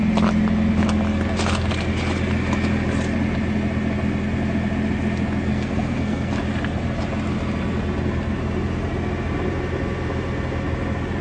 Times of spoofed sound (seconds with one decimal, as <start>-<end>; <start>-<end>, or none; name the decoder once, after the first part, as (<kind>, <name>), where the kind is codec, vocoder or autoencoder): 5.5-6.3 (codec, SNAC)